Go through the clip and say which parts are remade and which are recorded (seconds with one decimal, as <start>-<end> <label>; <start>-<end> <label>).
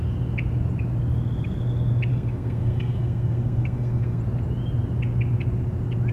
0.0-2.1 recorded; 2.1-4.2 remade; 4.2-6.1 recorded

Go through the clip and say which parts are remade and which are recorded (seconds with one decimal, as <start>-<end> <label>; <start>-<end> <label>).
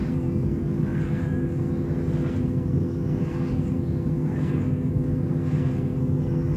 0.0-6.6 remade